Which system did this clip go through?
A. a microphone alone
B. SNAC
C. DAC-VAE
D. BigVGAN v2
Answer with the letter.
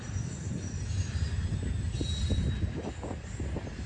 A